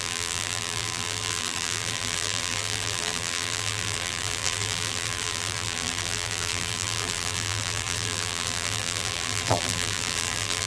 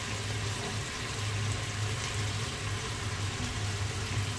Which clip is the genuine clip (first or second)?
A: second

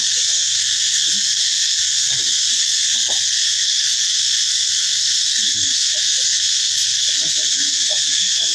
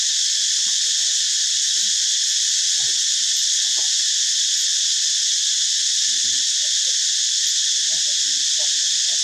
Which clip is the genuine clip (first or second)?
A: second